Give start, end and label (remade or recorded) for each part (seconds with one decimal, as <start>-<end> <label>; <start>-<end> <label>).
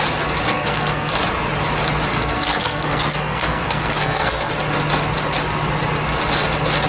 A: 0.0-0.5 recorded; 0.5-1.1 remade; 1.1-2.1 recorded; 2.1-4.5 remade; 4.5-6.9 recorded